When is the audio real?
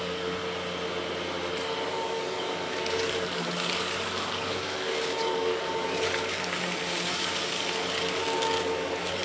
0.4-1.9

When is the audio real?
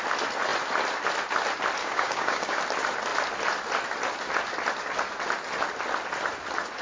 0.0-1.8; 2.6-6.8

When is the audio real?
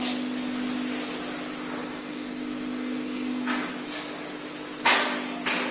0.0-1.8; 3.7-5.7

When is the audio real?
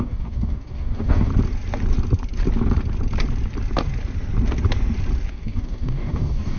1.3-5.3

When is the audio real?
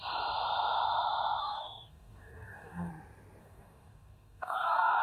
0.0-1.4; 2.9-3.4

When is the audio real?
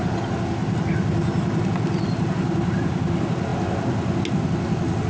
0.0-5.1